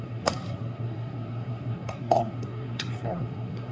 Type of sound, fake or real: fake